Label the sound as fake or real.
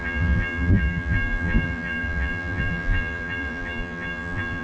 fake